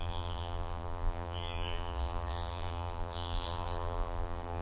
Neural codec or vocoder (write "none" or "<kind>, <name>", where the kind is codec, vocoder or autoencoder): vocoder, BigVGAN v2